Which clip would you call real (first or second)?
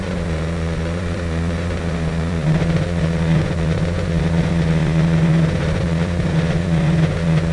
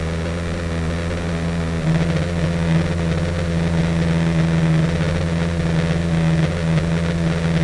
second